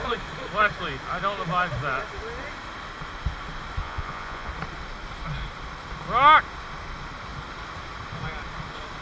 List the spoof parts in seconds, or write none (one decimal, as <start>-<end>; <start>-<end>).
3.8-4.5